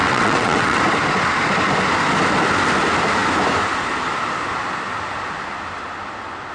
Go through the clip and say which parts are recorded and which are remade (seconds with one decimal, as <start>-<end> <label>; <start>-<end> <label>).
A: 0.0-0.8 remade; 0.8-6.5 recorded